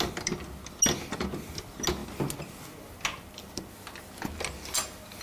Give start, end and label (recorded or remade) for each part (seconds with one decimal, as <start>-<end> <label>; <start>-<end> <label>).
0.0-5.2 recorded